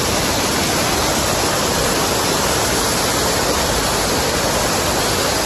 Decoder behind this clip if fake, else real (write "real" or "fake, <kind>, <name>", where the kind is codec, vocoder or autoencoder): real